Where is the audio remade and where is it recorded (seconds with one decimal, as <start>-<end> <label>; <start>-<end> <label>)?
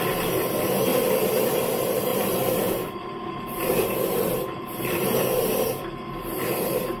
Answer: 0.0-2.1 recorded; 2.1-3.7 remade; 3.7-7.0 recorded